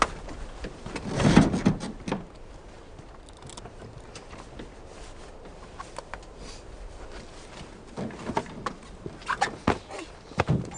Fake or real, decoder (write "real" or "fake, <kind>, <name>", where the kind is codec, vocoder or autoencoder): real